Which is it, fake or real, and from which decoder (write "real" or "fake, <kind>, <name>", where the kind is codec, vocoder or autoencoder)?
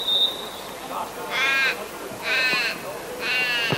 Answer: real